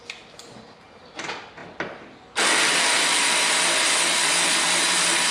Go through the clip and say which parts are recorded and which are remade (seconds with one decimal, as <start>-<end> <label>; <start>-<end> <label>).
0.0-5.3 recorded